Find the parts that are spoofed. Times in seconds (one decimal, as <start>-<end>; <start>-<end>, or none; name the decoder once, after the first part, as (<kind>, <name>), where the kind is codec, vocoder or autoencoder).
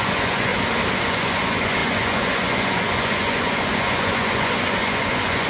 0.0-0.5 (vocoder, Vocos); 1.0-5.5